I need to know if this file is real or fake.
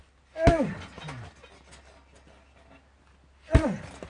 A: real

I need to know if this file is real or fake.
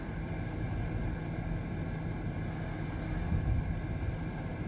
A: real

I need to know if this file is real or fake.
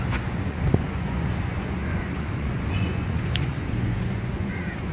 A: fake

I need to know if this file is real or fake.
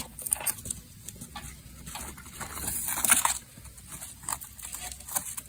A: real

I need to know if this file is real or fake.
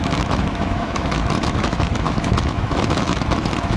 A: fake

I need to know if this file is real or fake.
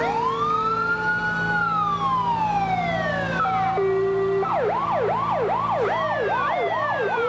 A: real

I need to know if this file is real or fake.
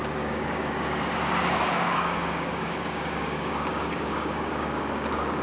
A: fake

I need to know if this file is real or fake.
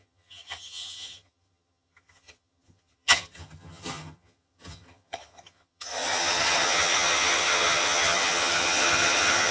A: fake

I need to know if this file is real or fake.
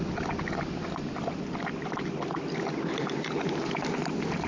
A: real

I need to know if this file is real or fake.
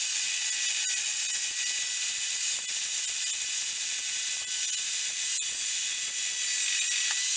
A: real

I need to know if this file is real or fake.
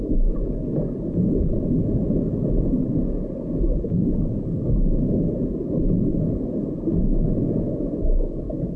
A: real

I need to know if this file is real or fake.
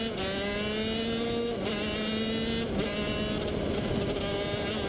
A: real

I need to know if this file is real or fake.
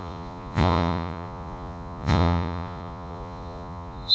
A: fake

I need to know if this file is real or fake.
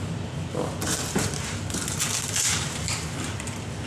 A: real